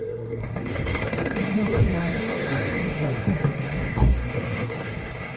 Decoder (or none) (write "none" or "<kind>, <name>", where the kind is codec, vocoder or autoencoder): codec, SNAC